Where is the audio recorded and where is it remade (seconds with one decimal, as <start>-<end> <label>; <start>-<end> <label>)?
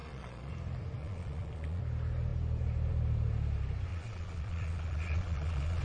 0.0-0.5 remade; 0.5-1.0 recorded; 1.0-1.8 remade; 1.8-3.9 recorded; 3.9-5.8 remade